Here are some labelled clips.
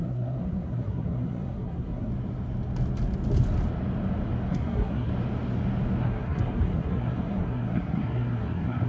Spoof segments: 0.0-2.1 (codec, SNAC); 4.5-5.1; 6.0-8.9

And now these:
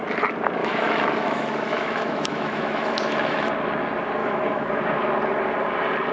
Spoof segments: 0.6-3.5 (autoencoder, DAC-VAE); 4.2-4.7

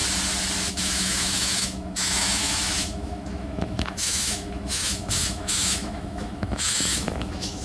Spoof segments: 0.7-7.6 (autoencoder, DAC-VAE)